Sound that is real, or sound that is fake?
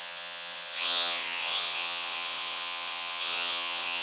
fake